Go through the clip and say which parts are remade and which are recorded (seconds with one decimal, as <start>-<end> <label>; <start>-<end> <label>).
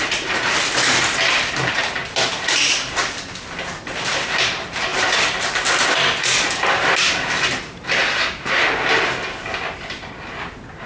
0.0-2.0 recorded; 2.0-4.4 remade; 4.4-4.9 recorded; 4.9-8.5 remade; 8.5-9.5 recorded; 9.5-10.1 remade; 10.1-10.9 recorded